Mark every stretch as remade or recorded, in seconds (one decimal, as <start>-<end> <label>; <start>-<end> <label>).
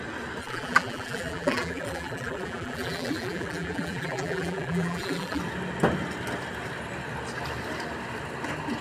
0.0-0.4 recorded; 0.4-5.4 remade; 5.4-8.8 recorded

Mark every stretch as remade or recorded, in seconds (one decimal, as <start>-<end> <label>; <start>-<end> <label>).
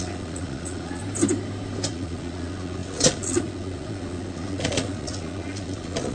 0.0-1.0 remade; 1.0-1.9 recorded; 1.9-6.1 remade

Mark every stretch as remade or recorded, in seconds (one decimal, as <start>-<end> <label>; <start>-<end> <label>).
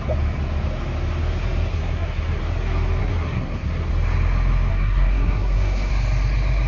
0.0-1.7 recorded; 1.7-2.4 remade; 2.4-3.0 recorded; 3.0-3.9 remade; 3.9-4.7 recorded; 4.7-5.9 remade; 5.9-6.7 recorded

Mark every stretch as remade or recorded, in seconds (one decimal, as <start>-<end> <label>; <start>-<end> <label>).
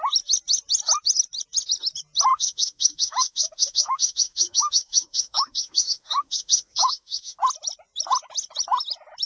0.0-2.3 recorded; 2.3-7.4 remade; 7.4-9.3 recorded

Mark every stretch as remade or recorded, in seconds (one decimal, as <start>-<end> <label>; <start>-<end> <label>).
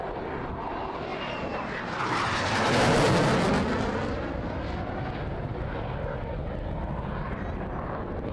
0.0-1.1 recorded; 1.1-2.0 remade; 2.0-8.3 recorded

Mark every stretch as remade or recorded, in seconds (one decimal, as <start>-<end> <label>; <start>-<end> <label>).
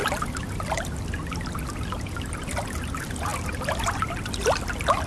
0.0-5.1 recorded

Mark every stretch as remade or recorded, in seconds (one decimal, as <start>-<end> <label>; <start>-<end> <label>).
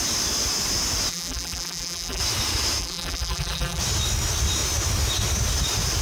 0.0-1.1 recorded; 1.1-2.2 remade; 2.2-2.8 recorded; 2.8-3.8 remade; 3.8-6.0 recorded